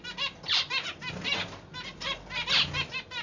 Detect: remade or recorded recorded